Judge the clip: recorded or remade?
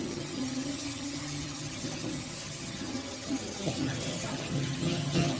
remade